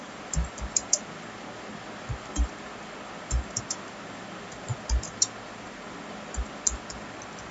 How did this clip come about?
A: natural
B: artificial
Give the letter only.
A